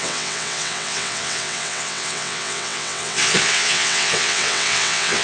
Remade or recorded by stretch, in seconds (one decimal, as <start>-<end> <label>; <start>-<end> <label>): 0.0-5.2 remade